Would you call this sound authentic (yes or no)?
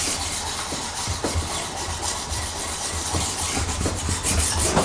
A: no